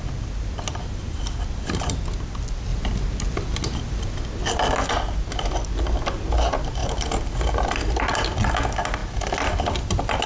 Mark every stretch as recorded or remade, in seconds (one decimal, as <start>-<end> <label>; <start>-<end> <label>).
0.0-10.3 recorded